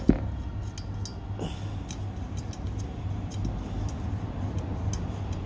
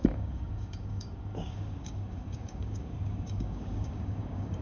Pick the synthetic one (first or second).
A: second